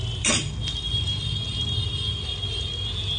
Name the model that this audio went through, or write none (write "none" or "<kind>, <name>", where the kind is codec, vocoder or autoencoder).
none